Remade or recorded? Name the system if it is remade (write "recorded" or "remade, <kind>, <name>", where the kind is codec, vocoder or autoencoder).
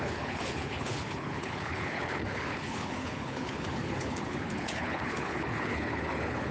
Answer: remade, codec, HILCodec